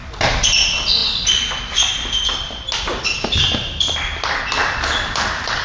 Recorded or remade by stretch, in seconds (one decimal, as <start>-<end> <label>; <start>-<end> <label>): 0.0-5.6 recorded